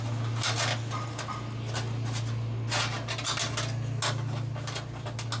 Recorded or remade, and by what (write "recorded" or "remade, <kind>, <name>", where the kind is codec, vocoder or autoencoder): recorded